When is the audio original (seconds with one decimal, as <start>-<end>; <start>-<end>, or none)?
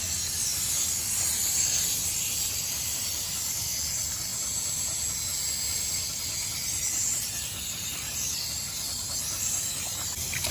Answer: 0.0-4.3; 5.1-10.5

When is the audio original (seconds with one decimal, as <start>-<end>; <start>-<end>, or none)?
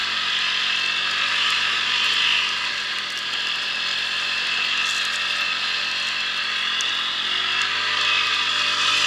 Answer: 0.0-9.1